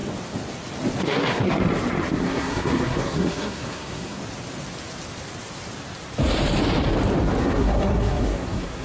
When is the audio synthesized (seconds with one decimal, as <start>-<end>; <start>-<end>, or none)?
1.0-1.6; 2.2-4.2; 7.4-8.8